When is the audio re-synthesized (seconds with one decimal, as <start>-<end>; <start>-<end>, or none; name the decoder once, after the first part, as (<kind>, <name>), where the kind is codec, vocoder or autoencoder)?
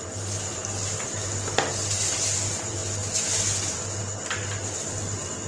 none